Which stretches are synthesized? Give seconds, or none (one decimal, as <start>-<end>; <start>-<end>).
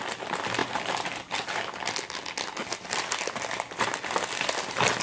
none